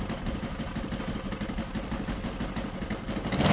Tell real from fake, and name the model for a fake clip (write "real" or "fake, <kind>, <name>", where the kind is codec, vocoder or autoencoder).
real